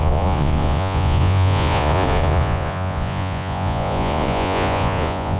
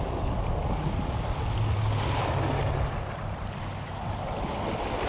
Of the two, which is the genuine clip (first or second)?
second